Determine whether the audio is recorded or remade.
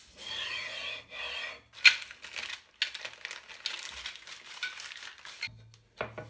recorded